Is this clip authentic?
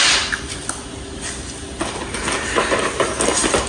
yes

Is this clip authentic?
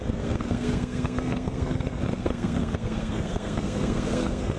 no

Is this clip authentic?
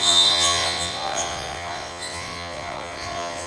no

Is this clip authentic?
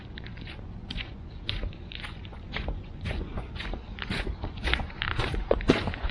no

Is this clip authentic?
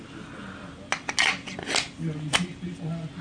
yes